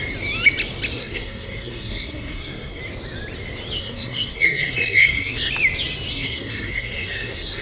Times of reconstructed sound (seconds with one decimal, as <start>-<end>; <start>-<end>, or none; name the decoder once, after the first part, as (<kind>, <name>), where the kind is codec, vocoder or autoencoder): 0.9-2.8 (codec, SNAC); 3.8-5.5; 6.1-7.6